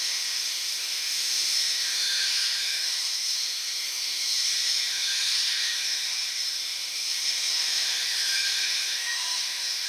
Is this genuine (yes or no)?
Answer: no